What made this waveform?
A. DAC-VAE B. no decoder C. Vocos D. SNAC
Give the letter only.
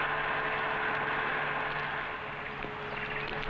B